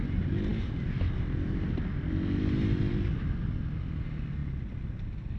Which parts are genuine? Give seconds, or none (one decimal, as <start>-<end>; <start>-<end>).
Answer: 0.0-5.4